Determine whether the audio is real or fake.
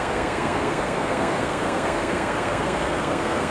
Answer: fake